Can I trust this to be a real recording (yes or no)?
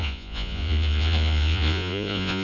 no